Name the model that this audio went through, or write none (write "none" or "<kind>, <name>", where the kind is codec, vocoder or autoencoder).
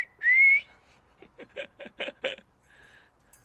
none